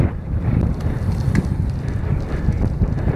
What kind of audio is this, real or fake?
fake